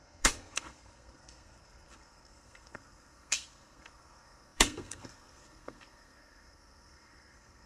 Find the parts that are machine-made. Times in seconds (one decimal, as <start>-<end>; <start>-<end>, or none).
0.0-7.7